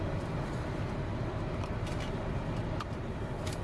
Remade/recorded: recorded